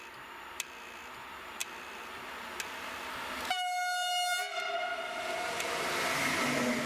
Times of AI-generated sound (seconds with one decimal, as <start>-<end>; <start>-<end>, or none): none